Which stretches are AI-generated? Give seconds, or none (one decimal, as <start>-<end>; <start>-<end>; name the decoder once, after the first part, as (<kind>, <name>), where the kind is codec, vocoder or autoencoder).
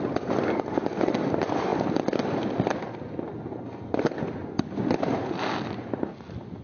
none